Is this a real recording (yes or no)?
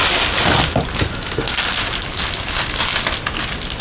yes